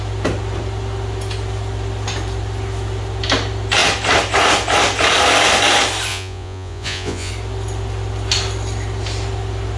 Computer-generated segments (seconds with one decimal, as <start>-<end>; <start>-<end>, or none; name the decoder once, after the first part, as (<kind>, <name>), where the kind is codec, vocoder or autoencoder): 6.1-7.3 (vocoder, Vocos)